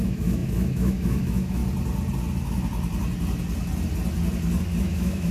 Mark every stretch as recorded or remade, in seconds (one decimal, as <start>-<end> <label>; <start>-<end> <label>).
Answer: 0.0-1.6 remade; 1.6-4.8 recorded; 4.8-5.3 remade